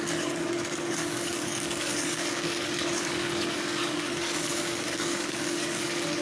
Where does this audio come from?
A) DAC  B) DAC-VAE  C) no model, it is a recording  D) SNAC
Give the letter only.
A